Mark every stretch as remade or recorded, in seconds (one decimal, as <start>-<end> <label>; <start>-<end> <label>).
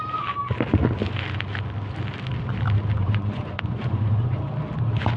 0.0-3.0 recorded; 3.0-4.4 remade; 4.4-5.2 recorded